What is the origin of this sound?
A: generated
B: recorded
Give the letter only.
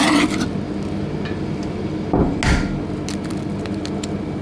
B